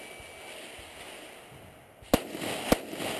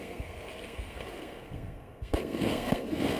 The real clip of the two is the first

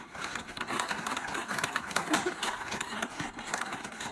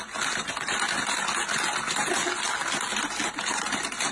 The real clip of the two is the second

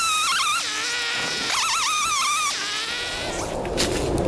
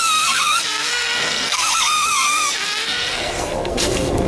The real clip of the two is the first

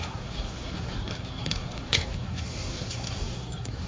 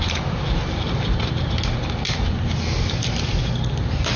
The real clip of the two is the second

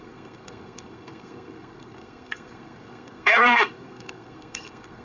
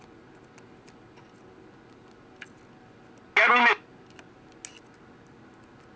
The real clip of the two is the second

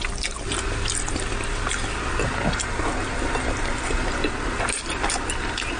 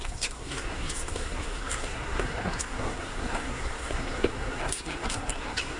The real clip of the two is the first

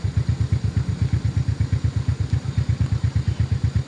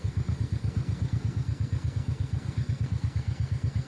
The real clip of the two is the first